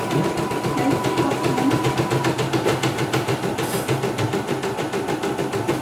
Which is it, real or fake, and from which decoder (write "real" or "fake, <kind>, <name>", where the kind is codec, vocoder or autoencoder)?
real